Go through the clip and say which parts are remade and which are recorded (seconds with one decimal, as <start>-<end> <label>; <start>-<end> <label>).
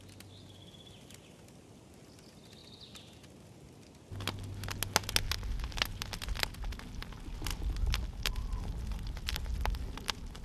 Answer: 0.0-10.4 recorded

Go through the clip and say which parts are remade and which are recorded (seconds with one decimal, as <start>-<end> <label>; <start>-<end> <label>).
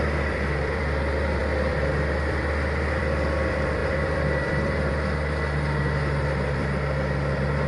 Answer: 0.0-7.7 remade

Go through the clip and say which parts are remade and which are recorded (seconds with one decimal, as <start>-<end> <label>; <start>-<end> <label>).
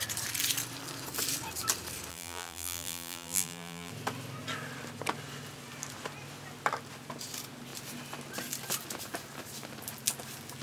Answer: 0.0-2.1 recorded; 2.1-3.9 remade; 3.9-10.6 recorded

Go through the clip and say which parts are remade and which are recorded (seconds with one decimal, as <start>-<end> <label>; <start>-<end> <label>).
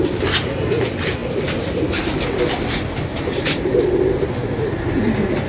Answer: 0.0-3.1 recorded; 3.1-4.8 remade; 4.8-5.5 recorded